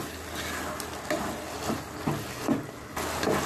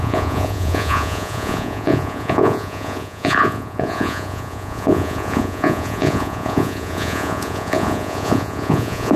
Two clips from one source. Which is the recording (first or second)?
first